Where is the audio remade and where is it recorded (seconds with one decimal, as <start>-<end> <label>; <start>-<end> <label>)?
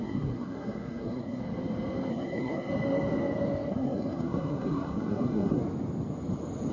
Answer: 0.0-1.4 remade; 1.4-2.1 recorded; 2.1-2.7 remade; 2.7-3.7 recorded; 3.7-5.6 remade; 5.6-6.7 recorded